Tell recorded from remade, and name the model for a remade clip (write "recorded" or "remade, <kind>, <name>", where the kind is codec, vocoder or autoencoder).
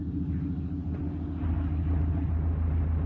recorded